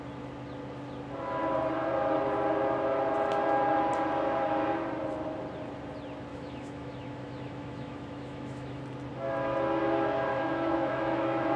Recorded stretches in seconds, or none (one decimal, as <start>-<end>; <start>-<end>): 0.0-6.3; 8.8-10.3